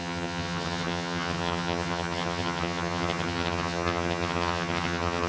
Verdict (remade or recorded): remade